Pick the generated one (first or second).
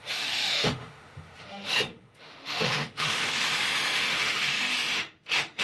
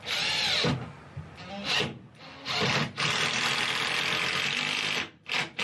first